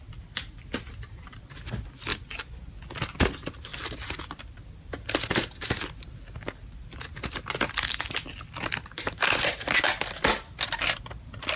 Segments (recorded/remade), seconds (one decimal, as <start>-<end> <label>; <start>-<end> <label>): 0.0-2.1 recorded; 2.1-2.7 remade; 2.7-11.6 recorded